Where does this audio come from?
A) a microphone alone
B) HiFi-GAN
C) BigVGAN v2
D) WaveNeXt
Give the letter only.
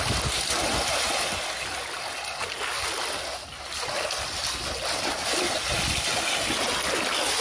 A